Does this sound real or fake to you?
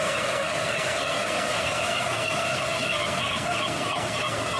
fake